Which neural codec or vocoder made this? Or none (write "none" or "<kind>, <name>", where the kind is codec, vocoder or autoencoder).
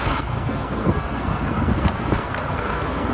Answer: codec, SNAC